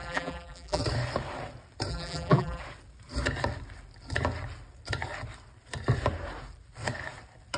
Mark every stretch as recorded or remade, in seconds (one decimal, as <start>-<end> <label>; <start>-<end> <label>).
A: 0.0-0.8 remade; 0.8-1.9 recorded; 1.9-2.6 remade; 2.6-7.6 recorded